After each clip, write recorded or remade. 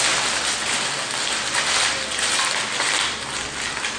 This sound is recorded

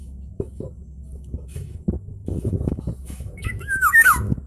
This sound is remade